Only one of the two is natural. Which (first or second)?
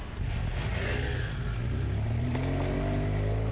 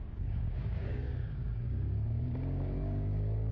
first